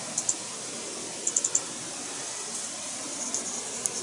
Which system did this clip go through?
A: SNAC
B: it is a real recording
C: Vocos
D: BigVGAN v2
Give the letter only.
B